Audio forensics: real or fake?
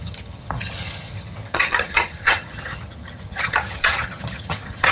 fake